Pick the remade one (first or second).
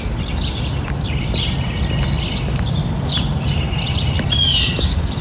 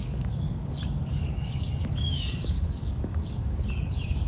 second